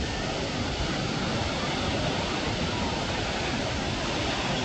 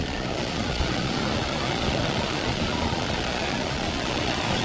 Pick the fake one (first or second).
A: second